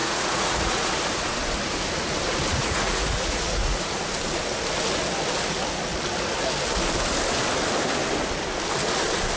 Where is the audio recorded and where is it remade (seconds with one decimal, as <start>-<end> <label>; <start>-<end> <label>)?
0.0-0.9 remade; 0.9-2.5 recorded; 2.5-4.0 remade; 4.0-9.4 recorded